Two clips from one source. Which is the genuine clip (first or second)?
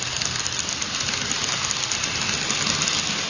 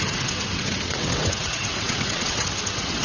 first